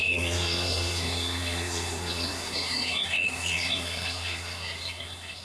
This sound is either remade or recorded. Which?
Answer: remade